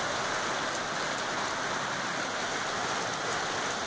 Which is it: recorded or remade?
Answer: recorded